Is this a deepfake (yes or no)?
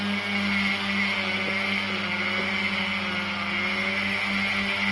no